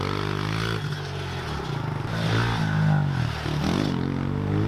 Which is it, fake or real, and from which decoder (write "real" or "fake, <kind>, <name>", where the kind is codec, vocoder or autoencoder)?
real